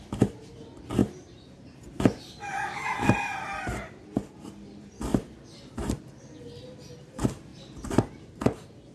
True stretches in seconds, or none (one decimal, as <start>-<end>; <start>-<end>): 0.0-1.0; 3.9-5.1; 6.0-7.5